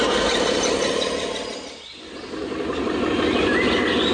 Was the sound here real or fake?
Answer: real